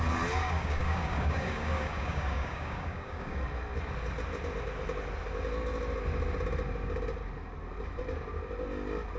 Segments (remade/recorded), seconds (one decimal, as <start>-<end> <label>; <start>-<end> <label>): 0.0-0.4 recorded; 0.4-3.4 remade; 3.4-9.2 recorded